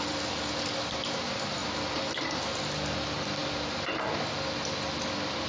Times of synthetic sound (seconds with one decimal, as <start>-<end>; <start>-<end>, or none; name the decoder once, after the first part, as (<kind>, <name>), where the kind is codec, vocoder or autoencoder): 0.0-3.4 (vocoder, BigVGAN v2); 4.8-5.5